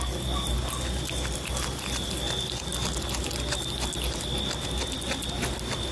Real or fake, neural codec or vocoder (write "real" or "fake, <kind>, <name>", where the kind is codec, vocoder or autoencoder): real